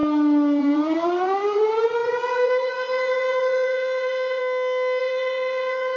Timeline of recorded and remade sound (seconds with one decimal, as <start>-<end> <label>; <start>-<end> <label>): 0.0-0.6 recorded; 0.6-4.4 remade; 4.4-5.0 recorded; 5.0-6.0 remade